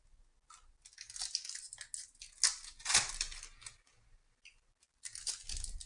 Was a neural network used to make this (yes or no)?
no